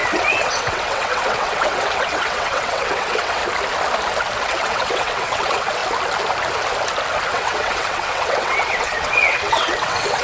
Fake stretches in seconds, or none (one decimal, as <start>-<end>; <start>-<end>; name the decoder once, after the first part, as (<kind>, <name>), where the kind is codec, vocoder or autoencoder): 0.0-3.4 (vocoder, WaveNeXt); 4.4-5.8; 7.3-10.2